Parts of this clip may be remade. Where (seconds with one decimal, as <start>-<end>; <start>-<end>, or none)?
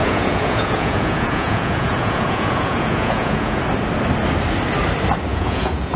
0.0-3.6; 5.3-6.0